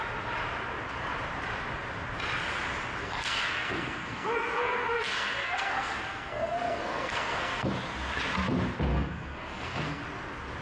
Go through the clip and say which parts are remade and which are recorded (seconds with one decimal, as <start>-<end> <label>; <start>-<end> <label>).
0.0-3.0 recorded; 3.0-7.7 remade; 7.7-8.9 recorded; 8.9-10.0 remade; 10.0-10.6 recorded

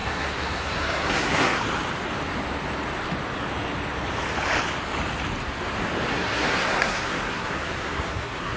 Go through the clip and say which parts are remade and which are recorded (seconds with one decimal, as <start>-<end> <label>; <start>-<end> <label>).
0.0-1.6 remade; 1.6-6.1 recorded; 6.1-8.6 remade

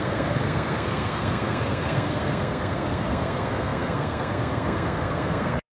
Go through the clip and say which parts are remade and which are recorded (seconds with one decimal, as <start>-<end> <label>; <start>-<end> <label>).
0.0-5.8 remade

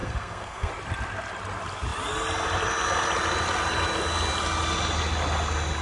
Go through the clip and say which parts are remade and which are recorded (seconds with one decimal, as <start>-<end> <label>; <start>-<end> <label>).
0.0-0.7 remade; 0.7-5.8 recorded

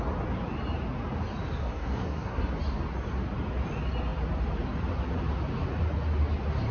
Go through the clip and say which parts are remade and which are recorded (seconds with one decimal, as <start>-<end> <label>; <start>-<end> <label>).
0.0-1.6 recorded; 1.6-2.5 remade; 2.5-6.7 recorded